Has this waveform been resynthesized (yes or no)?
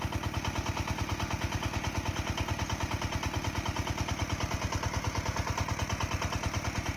no